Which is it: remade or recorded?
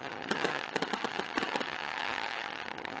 remade